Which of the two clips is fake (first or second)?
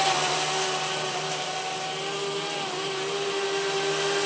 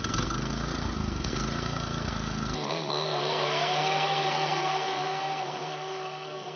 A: second